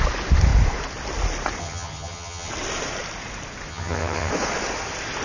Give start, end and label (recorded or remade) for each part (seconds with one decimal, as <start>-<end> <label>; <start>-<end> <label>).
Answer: 0.0-1.6 recorded; 1.6-2.5 remade; 2.5-3.7 recorded; 3.7-4.3 remade; 4.3-5.2 recorded